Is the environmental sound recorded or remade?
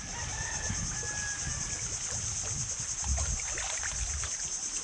recorded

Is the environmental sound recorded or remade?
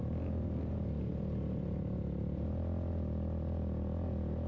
recorded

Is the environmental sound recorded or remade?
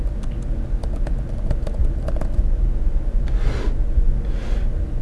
recorded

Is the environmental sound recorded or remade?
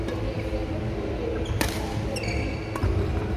recorded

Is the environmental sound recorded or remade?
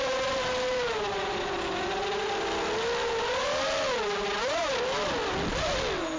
recorded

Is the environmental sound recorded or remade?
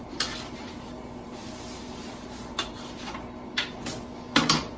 recorded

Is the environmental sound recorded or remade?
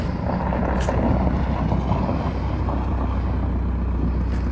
recorded